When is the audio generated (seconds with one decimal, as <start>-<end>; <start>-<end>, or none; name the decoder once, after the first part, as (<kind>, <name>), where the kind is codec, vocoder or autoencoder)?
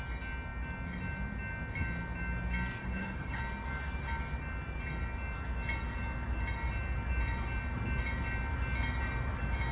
2.8-3.4 (codec, HILCodec)